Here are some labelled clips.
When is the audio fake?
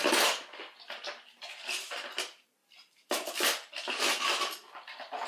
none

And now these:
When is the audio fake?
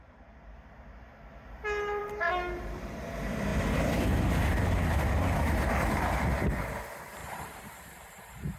2.0-3.1; 7.2-8.6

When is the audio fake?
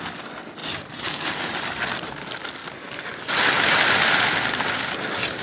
0.6-2.1; 2.6-5.4